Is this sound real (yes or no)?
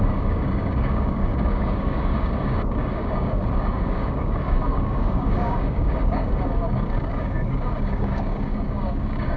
no